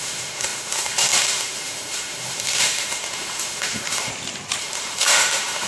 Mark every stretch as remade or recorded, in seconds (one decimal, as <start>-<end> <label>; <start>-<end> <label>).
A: 0.0-4.1 remade; 4.1-4.6 recorded; 4.6-5.7 remade